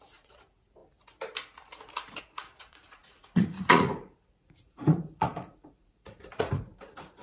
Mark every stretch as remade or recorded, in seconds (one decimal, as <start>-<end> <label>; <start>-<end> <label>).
0.0-0.8 remade; 0.8-2.2 recorded; 2.2-7.2 remade